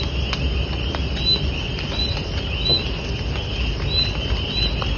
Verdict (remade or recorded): recorded